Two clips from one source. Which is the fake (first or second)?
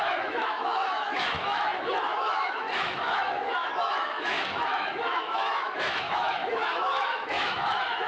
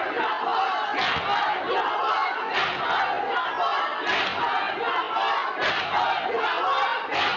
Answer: first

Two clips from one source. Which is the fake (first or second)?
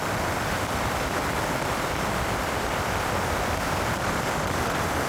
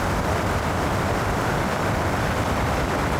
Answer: first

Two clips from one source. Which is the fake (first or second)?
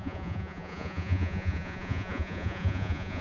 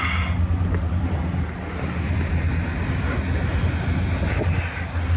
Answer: first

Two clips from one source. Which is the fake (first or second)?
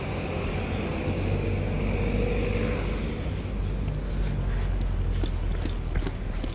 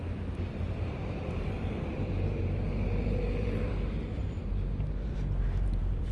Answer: second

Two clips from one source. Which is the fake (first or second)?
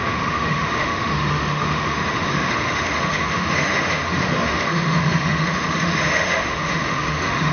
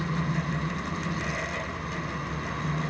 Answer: first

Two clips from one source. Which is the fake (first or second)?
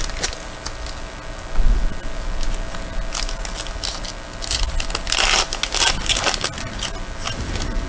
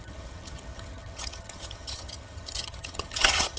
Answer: second